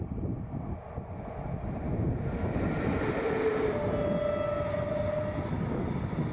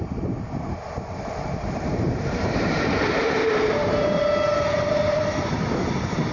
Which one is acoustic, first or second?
first